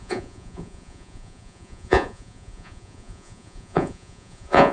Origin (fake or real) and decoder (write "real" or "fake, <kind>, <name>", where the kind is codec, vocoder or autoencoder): fake, vocoder, Vocos